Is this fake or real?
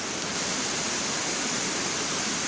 real